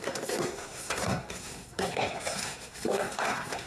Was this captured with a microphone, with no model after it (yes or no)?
no